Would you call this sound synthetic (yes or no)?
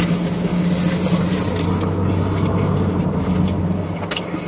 no